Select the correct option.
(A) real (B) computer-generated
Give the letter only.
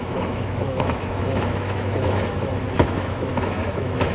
B